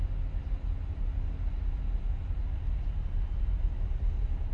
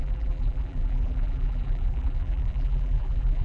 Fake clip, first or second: second